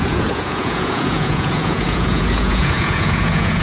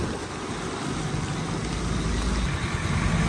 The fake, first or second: first